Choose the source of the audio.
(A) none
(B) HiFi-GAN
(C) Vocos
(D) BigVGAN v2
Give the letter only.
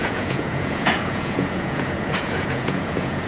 C